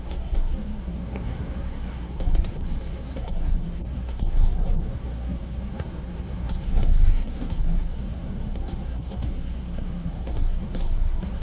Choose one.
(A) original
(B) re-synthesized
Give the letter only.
B